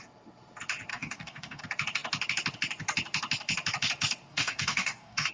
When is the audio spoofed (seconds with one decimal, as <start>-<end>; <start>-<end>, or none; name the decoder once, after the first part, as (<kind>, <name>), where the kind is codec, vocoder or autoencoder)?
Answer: 0.9-1.6 (codec, DAC); 4.3-5.3